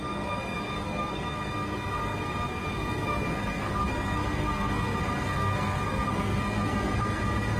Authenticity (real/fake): fake